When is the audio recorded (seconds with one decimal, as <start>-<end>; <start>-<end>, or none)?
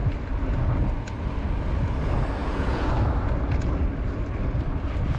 0.0-2.4; 2.9-5.2